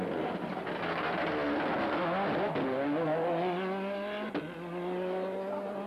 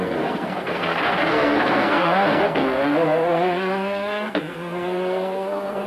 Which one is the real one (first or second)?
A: first